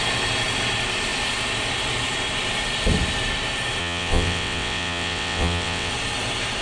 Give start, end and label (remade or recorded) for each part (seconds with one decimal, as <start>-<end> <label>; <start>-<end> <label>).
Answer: 0.0-3.8 recorded; 3.8-5.9 remade; 5.9-6.6 recorded